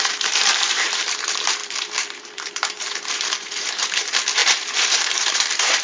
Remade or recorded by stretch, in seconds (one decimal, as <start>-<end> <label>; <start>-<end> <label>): 0.0-5.8 remade